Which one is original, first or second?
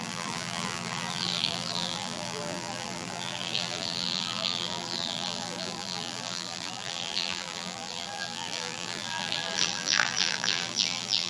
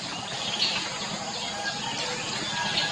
second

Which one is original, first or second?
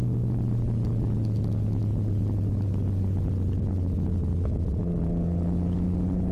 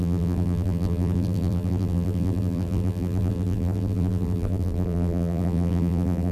first